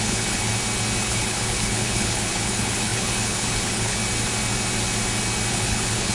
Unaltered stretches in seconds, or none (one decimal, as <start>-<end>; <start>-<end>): 0.5-1.0; 4.0-5.5